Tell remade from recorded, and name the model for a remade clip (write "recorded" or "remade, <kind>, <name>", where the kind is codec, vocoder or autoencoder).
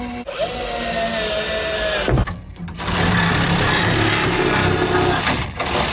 recorded